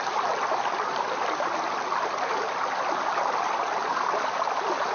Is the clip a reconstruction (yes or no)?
no